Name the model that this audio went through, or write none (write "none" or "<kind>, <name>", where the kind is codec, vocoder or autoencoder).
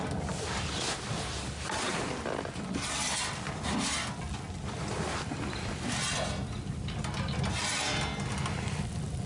none